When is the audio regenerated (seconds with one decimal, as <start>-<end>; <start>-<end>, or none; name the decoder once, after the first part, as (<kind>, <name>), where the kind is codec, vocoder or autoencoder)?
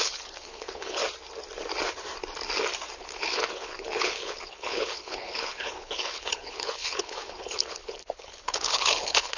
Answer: 0.0-1.0 (codec, HILCodec); 3.0-9.4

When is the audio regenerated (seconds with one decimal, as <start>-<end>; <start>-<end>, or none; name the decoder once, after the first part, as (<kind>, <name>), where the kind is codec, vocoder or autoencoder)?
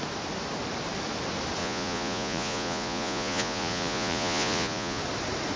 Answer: 1.6-5.0 (vocoder, Vocos)